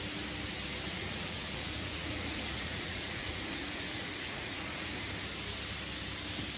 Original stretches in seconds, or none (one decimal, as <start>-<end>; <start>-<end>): 0.0-0.9; 4.9-6.6

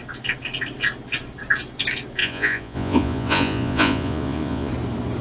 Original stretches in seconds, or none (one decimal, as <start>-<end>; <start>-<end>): 0.0-2.2; 4.7-5.2

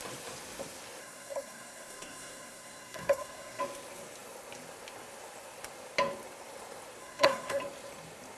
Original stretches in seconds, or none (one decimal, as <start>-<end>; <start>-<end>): 0.0-1.0; 3.6-7.0; 7.6-8.4